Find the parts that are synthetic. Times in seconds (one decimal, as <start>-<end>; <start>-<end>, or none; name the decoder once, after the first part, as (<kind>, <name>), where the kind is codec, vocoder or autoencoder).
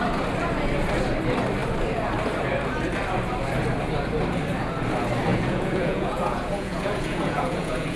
5.3-8.0 (vocoder, Vocos)